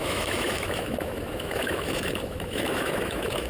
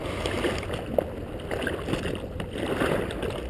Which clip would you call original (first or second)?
second